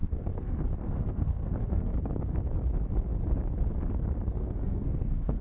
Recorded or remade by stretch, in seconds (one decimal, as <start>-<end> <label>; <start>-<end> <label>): 0.0-1.9 remade; 1.9-4.3 recorded; 4.3-5.4 remade